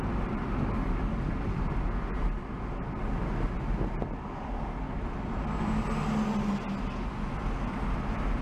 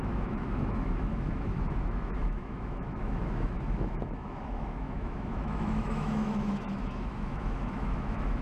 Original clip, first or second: first